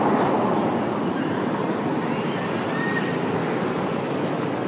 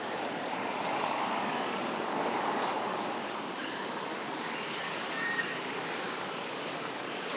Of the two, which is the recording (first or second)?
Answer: first